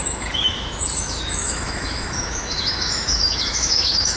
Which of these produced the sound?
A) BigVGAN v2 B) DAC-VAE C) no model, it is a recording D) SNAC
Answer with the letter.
B